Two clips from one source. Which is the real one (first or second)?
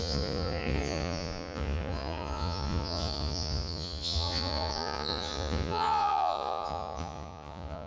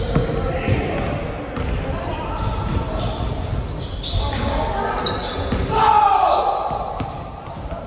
second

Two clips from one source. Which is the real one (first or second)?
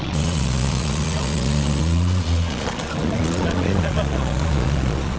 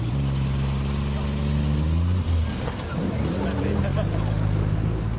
second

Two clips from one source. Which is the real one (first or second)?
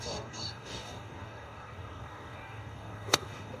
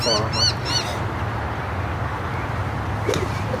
second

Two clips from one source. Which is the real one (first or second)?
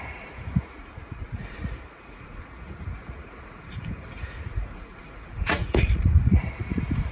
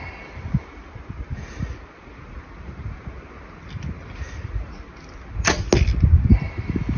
second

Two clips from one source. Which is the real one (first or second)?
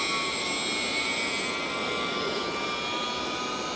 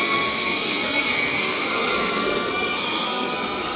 first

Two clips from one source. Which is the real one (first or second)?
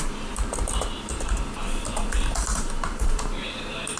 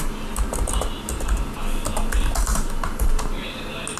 second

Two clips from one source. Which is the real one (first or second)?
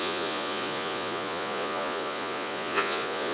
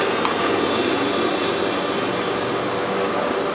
second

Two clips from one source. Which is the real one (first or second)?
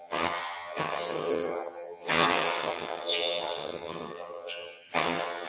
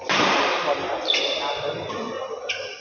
second